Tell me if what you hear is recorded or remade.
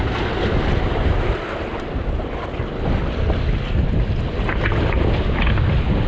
recorded